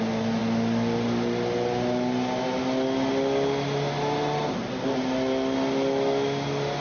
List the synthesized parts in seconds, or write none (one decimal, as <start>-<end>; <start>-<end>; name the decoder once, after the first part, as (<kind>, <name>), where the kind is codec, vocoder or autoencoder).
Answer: none